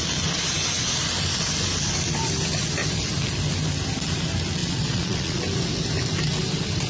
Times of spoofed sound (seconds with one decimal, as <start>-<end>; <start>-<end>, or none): 4.6-5.4